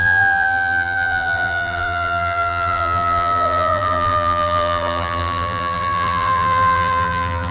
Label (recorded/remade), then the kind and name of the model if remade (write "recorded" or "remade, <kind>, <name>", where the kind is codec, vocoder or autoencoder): remade, vocoder, BigVGAN v2